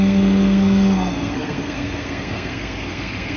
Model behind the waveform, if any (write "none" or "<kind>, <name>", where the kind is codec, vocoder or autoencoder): codec, SNAC